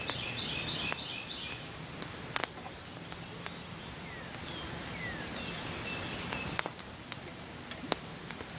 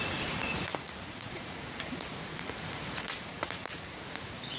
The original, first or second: first